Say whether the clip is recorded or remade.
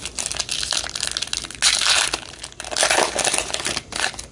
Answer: recorded